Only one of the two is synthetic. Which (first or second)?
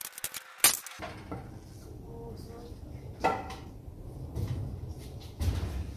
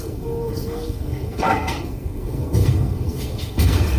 second